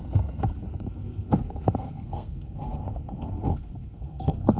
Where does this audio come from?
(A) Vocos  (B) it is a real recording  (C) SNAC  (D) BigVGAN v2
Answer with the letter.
C